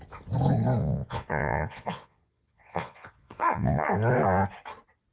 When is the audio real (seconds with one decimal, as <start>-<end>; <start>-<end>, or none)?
0.0-0.8; 3.9-5.1